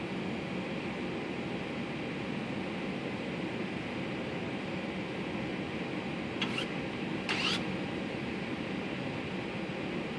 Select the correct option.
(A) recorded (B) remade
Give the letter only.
A